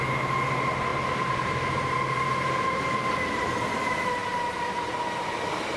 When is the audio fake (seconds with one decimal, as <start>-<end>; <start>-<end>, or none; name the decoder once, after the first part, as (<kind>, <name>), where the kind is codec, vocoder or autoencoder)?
0.9-3.5 (vocoder, BigVGAN v2); 4.2-4.9